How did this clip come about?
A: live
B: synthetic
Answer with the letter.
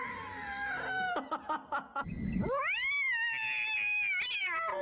A